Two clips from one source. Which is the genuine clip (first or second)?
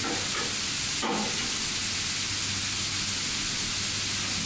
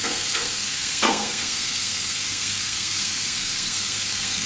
first